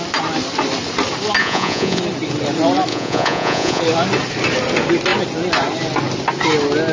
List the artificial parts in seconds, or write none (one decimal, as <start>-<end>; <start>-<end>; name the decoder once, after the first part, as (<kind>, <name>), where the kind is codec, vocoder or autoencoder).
1.4-2.0 (vocoder, Vocos); 2.9-3.8